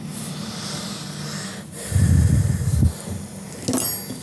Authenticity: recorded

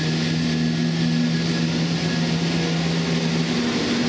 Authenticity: recorded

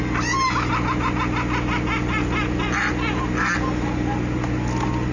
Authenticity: recorded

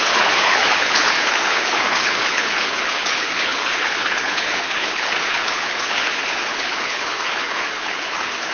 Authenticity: remade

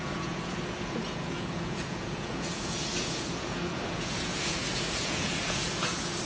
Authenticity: remade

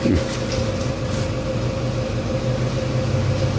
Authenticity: recorded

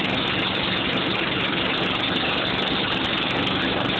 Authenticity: recorded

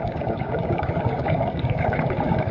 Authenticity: remade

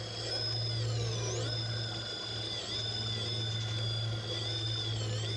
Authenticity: recorded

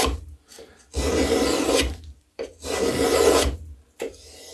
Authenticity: recorded